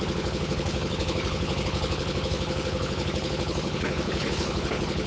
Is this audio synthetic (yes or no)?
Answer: yes